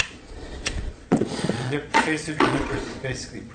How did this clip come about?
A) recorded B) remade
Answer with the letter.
B